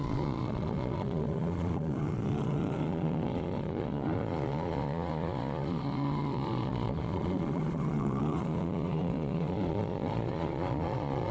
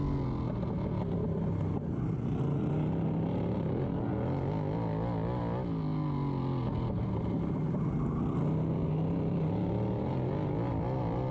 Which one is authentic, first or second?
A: second